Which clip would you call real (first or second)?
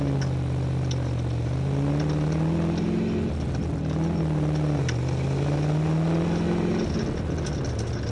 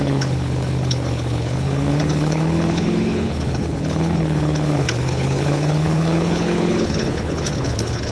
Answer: first